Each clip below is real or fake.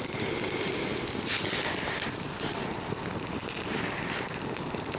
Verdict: fake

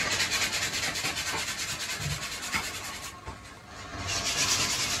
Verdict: fake